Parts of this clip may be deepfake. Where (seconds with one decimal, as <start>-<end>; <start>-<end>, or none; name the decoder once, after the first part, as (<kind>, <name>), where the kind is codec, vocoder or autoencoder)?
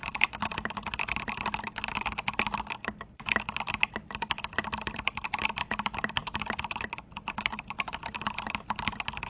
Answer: none